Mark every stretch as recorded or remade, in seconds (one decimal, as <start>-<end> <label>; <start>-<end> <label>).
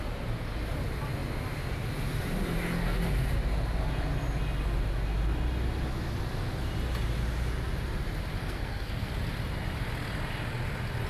0.0-8.4 recorded; 8.4-9.1 remade; 9.1-11.1 recorded